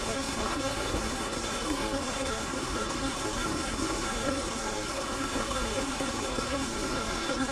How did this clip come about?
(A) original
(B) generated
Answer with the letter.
B